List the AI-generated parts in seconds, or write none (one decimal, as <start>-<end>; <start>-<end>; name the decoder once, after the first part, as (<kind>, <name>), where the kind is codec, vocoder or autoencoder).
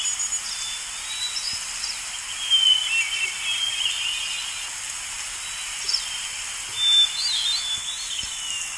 none